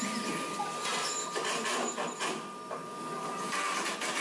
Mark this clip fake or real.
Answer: real